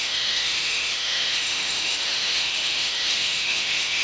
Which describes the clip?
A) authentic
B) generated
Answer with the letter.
B